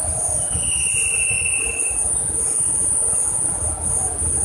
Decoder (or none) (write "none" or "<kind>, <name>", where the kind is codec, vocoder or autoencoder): none